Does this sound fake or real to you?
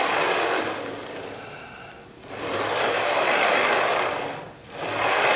real